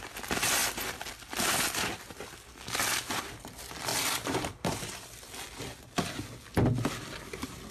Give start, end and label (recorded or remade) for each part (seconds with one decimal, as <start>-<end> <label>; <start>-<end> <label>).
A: 0.0-3.9 recorded; 3.9-4.9 remade; 4.9-7.7 recorded